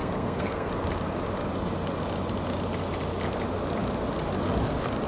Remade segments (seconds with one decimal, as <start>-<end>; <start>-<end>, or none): 0.0-0.7